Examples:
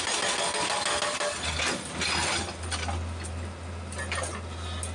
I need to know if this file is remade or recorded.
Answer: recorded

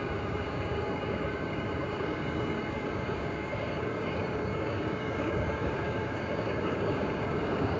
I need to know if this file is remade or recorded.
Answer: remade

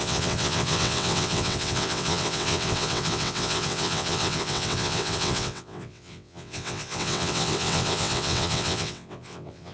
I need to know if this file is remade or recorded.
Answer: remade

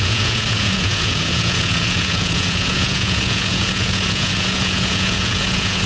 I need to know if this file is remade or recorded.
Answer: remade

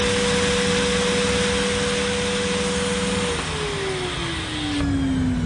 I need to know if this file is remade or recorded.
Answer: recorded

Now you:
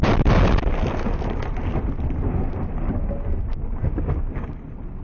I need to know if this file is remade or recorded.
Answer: recorded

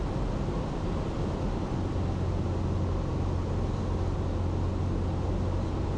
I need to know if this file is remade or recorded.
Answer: recorded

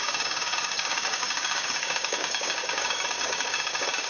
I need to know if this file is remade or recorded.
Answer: remade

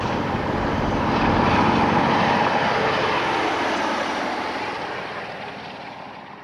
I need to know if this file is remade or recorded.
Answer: recorded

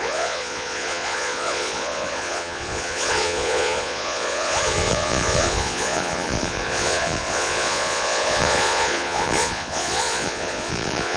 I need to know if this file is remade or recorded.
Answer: remade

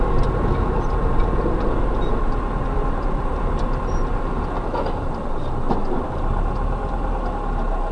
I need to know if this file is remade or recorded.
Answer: recorded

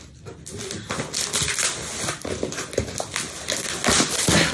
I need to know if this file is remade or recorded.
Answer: recorded